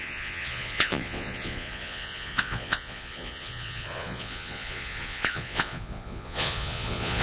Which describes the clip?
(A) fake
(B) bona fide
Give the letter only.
A